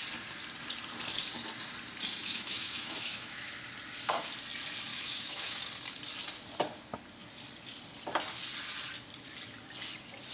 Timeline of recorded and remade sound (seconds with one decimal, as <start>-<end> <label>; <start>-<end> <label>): 0.0-2.2 recorded; 2.2-3.5 remade; 3.5-4.9 recorded; 4.9-5.6 remade; 5.6-10.3 recorded